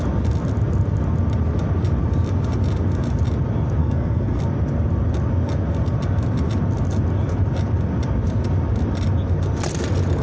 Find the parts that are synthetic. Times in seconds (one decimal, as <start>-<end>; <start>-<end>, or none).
3.8-4.4